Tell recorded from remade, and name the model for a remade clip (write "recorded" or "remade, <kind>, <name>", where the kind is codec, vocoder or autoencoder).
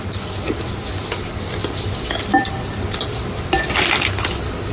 recorded